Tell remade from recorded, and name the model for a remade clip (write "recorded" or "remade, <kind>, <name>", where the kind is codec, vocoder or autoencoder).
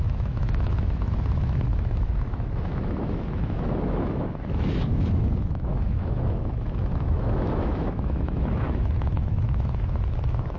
remade, autoencoder, DAC-VAE